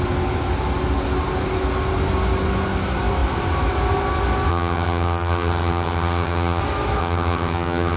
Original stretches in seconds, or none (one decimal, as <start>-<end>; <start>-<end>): 0.0-4.5; 6.6-7.0